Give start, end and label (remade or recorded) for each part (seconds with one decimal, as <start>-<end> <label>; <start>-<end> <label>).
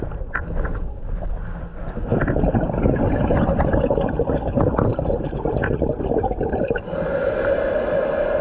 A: 0.0-8.4 recorded